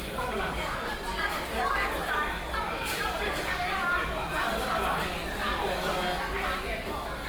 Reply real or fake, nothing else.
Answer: fake